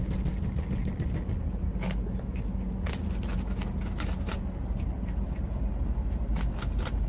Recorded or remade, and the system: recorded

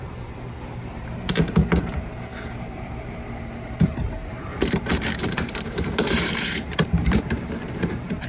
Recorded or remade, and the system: remade, vocoder, BigVGAN v2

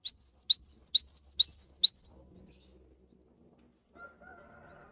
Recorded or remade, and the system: recorded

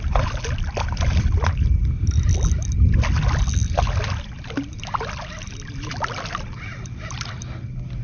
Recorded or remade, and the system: recorded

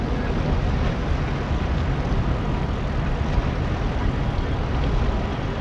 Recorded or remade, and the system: recorded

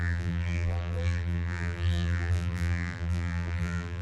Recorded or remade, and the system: remade, vocoder, BigVGAN v2